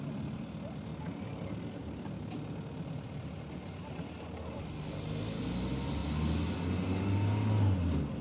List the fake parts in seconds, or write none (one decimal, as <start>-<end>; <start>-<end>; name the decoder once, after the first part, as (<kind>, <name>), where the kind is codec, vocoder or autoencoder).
none